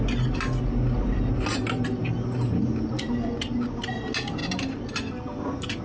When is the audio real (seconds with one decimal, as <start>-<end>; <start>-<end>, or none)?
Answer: 0.0-5.8